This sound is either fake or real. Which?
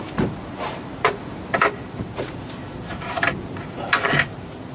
fake